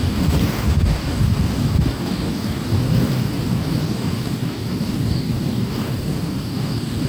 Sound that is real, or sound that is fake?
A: fake